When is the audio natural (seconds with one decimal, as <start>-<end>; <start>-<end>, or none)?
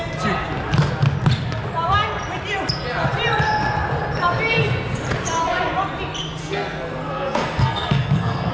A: 0.0-6.4